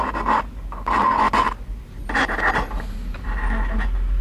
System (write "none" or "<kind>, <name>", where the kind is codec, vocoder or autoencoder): none